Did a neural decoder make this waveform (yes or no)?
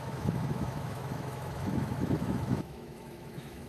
yes